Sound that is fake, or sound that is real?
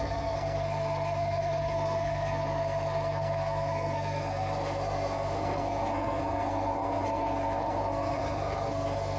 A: fake